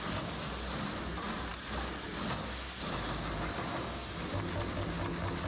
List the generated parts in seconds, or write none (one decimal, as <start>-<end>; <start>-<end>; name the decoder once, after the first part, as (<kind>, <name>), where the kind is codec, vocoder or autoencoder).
none